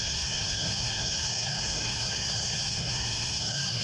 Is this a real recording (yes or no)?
no